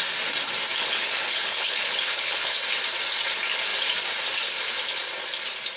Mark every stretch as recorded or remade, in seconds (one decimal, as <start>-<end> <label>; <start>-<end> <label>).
0.0-0.8 recorded; 0.8-2.6 remade; 2.6-5.8 recorded

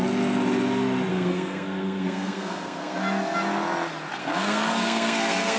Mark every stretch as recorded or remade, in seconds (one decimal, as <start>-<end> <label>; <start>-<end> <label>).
0.0-1.1 recorded; 1.1-3.0 remade; 3.0-4.2 recorded; 4.2-5.6 remade

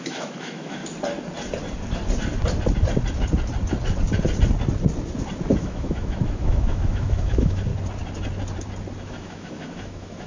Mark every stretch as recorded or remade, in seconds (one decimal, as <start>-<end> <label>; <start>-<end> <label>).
0.0-0.8 remade; 0.8-5.6 recorded; 5.6-7.7 remade; 7.7-9.0 recorded; 9.0-10.3 remade

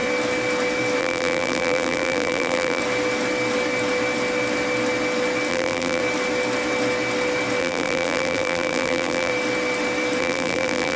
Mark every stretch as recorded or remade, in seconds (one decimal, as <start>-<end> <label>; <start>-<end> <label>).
0.0-1.0 recorded; 1.0-2.8 remade; 2.8-5.5 recorded; 5.5-6.0 remade; 6.0-7.6 recorded; 7.6-9.3 remade; 9.3-10.2 recorded; 10.2-11.0 remade

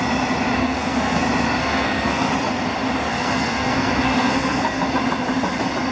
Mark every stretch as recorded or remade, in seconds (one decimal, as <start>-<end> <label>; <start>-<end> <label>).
0.0-0.6 recorded; 0.6-1.2 remade; 1.2-1.6 recorded; 1.6-2.3 remade; 2.3-3.1 recorded; 3.1-4.9 remade; 4.9-5.9 recorded